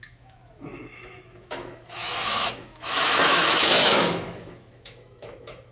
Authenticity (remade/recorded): remade